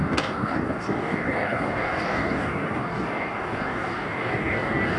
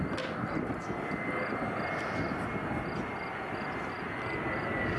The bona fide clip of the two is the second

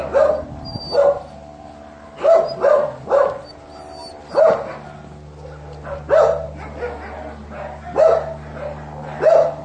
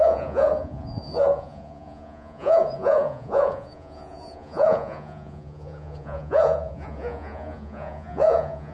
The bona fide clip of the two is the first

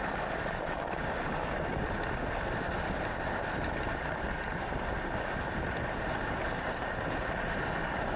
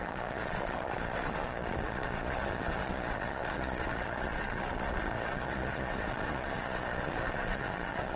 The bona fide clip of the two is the first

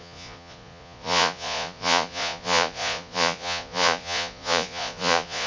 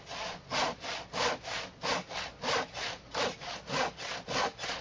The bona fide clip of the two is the second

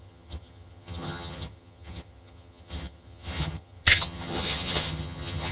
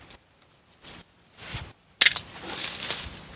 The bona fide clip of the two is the second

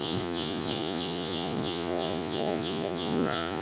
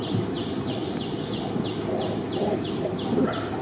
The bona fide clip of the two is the second